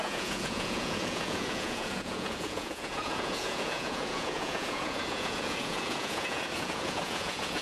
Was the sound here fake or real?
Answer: fake